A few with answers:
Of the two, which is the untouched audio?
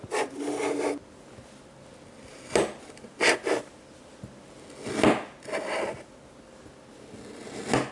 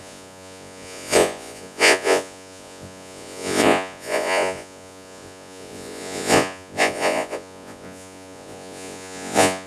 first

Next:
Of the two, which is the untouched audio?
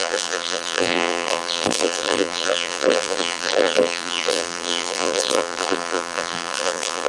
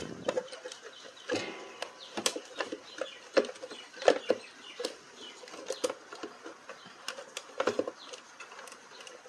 second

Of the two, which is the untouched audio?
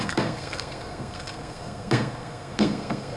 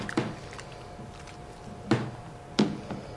second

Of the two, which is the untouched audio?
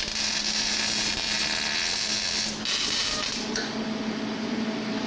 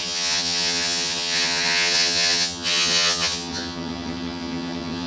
first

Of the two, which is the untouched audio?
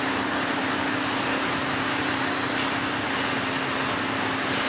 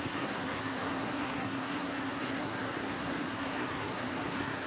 first